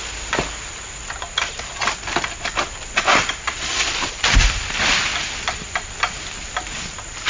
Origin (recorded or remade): remade